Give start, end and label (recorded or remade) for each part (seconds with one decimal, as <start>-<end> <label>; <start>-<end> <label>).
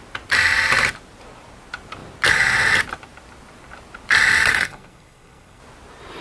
0.0-4.5 recorded; 4.5-5.6 remade; 5.6-6.2 recorded